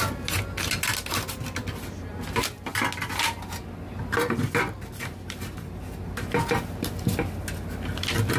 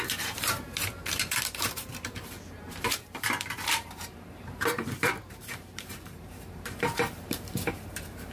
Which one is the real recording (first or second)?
first